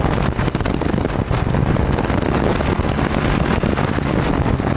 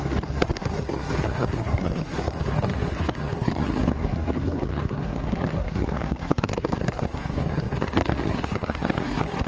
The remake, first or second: second